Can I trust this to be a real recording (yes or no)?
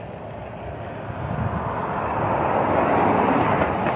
yes